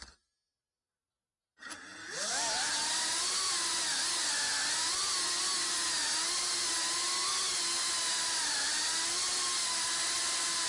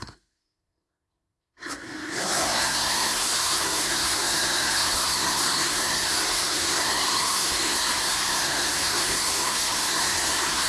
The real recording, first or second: first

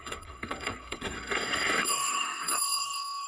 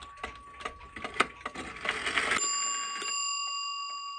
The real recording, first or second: second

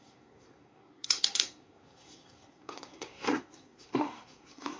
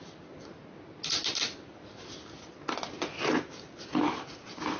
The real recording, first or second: second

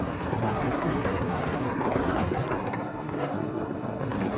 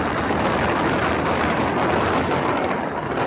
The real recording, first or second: second